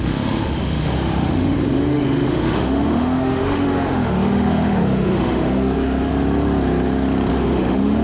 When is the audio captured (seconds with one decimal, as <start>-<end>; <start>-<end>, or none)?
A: 6.1-7.3